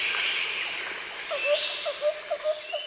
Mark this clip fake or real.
real